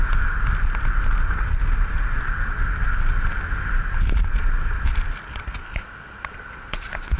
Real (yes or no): yes